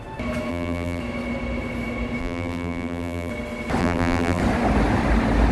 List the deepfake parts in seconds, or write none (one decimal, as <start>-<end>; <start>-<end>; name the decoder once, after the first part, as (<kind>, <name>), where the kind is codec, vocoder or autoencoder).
0.5-1.0 (vocoder, BigVGAN v2); 2.2-3.3; 3.8-4.4